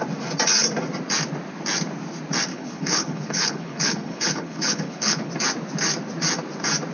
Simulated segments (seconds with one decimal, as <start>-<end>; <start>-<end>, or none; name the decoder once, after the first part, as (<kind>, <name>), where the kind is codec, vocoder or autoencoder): 2.5-5.3 (codec, HILCodec)